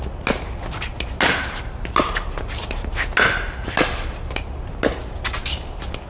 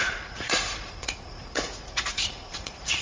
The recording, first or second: first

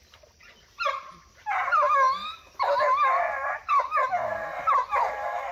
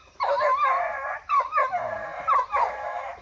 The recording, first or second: first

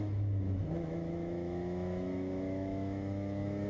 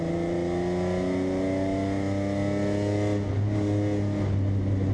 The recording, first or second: second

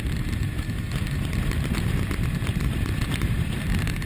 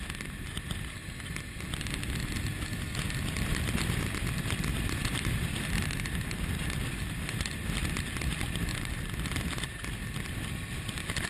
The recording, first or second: second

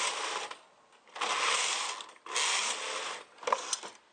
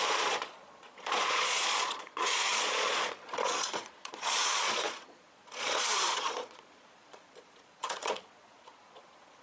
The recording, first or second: first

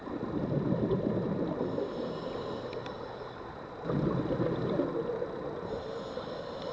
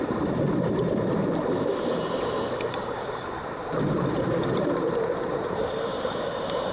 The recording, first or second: first